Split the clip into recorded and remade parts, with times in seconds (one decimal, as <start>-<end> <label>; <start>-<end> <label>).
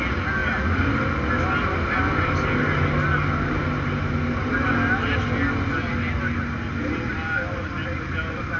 0.0-8.6 recorded